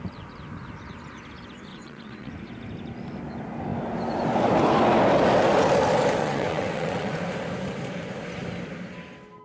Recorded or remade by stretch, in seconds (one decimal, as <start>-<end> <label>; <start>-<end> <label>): 0.0-1.7 recorded; 1.7-2.3 remade; 2.3-6.2 recorded; 6.2-7.2 remade; 7.2-9.4 recorded